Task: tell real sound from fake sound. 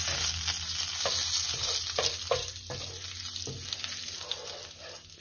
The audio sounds real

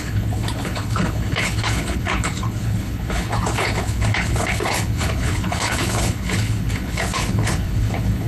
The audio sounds fake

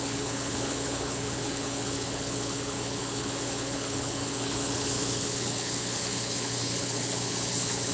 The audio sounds fake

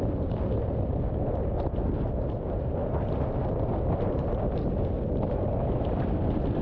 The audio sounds real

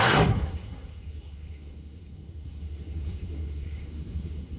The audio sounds fake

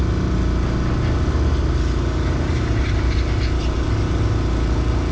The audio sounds real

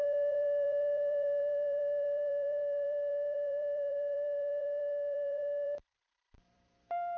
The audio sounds fake